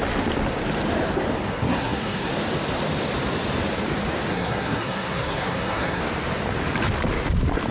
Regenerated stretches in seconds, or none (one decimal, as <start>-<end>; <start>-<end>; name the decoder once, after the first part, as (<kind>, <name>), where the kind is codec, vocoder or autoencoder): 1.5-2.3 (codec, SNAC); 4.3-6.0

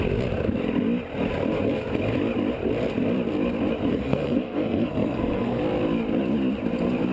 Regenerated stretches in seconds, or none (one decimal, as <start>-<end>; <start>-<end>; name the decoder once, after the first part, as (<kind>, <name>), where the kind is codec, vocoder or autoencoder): 3.9-5.6 (codec, SNAC)

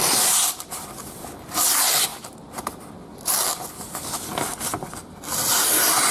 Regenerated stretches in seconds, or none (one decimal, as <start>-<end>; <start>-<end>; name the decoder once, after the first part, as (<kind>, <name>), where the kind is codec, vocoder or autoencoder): 0.0-6.1 (vocoder, BigVGAN v2)

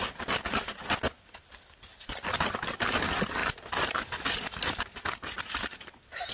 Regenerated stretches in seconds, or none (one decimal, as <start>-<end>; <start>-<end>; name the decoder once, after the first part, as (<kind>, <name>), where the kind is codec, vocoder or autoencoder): none

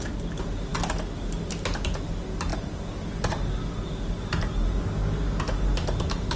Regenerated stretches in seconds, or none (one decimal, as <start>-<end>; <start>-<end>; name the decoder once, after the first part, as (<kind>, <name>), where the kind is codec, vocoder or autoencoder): none

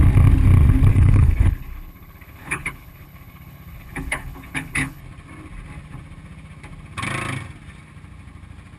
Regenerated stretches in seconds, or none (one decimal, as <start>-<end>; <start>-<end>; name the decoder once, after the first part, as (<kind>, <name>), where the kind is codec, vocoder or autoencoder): 0.9-5.0 (codec, HILCodec)

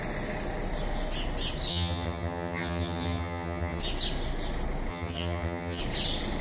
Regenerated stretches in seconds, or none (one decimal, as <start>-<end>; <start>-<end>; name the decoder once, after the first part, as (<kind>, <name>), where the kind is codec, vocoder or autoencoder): 1.7-3.8 (vocoder, HiFi-GAN); 4.9-5.8

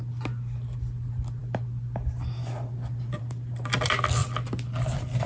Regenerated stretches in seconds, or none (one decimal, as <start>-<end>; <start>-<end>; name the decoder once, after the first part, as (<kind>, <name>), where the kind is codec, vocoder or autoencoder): none